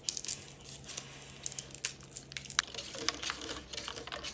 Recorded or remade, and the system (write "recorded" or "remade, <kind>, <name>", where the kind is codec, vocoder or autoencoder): recorded